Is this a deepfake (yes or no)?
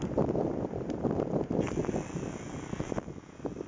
no